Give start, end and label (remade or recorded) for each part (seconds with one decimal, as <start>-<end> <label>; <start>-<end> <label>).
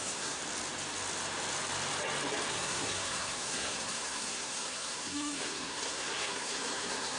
0.0-0.4 remade; 0.4-2.5 recorded; 2.5-7.2 remade